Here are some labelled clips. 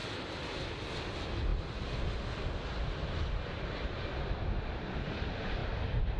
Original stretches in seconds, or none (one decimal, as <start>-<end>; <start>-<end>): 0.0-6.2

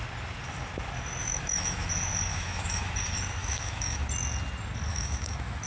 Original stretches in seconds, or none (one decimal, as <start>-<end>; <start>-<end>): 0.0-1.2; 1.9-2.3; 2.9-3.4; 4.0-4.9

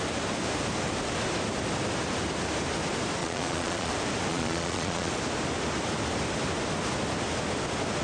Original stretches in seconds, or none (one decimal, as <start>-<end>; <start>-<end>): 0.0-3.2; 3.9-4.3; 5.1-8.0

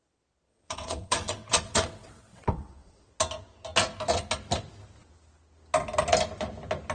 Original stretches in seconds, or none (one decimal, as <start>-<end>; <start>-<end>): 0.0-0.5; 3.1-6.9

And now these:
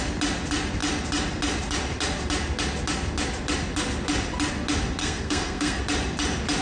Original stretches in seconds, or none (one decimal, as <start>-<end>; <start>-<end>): 0.0-5.0; 5.8-6.6

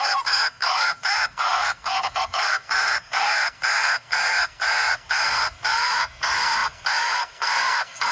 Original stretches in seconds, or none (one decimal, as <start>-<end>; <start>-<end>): none

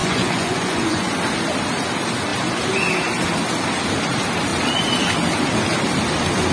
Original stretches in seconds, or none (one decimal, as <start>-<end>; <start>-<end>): 1.1-6.5

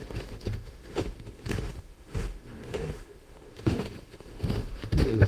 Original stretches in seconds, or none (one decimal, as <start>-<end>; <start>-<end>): none